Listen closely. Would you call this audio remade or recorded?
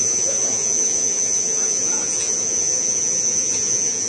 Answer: remade